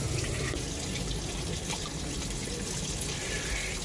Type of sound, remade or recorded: recorded